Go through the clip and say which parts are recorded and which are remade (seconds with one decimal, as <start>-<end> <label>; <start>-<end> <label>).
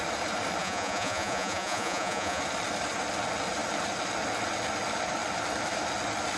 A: 0.0-0.6 recorded; 0.6-2.4 remade; 2.4-6.4 recorded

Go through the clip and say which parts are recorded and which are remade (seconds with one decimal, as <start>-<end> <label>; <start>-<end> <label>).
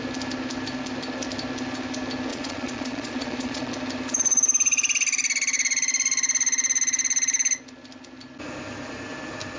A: 0.0-2.3 recorded; 2.3-3.7 remade; 3.7-9.6 recorded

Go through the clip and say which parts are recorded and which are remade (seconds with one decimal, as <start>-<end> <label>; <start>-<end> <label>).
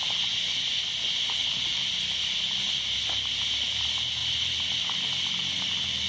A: 0.0-1.4 recorded; 1.4-3.0 remade; 3.0-4.2 recorded; 4.2-4.8 remade; 4.8-6.1 recorded